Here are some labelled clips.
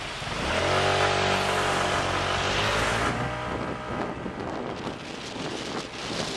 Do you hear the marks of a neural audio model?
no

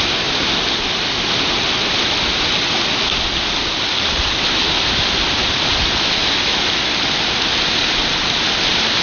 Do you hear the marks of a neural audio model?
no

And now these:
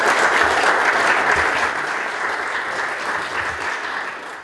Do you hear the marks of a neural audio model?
no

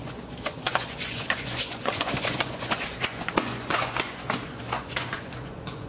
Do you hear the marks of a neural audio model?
yes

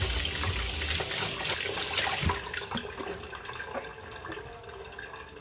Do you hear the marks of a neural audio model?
no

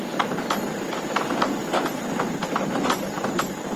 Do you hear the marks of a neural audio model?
no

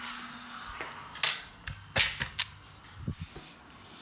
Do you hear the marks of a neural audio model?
no